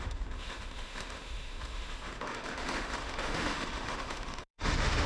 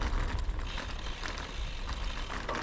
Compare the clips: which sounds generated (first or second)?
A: first